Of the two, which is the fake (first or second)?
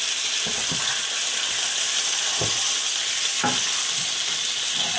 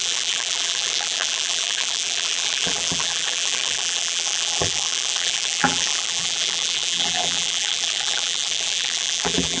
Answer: second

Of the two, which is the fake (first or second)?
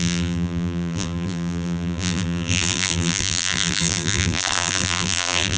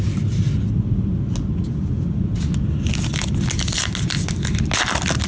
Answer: first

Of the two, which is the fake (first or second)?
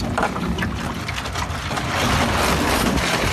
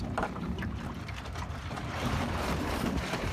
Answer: second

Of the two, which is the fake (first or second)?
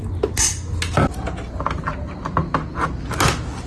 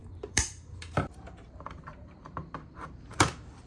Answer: second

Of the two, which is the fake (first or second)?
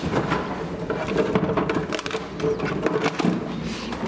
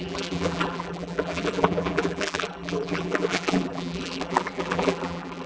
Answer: second